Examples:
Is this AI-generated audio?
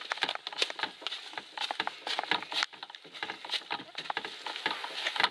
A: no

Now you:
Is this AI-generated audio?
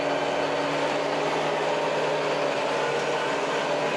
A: no